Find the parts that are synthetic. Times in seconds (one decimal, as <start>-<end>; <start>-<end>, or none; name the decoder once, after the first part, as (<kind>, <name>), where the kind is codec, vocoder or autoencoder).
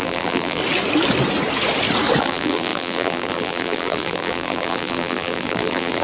0.0-0.6 (vocoder, BigVGAN v2); 2.2-6.0